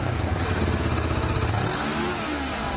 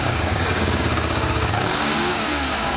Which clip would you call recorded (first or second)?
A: first